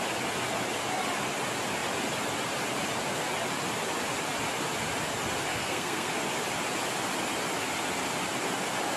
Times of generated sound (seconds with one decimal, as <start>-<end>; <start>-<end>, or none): 5.5-6.1